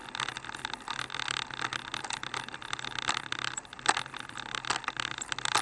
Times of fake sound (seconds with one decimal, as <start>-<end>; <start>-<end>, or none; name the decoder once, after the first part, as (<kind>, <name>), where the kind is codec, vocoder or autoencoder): none